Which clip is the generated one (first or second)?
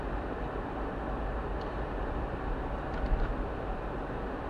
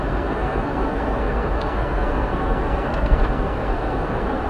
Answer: second